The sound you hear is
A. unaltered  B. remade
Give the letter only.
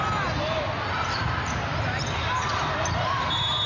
A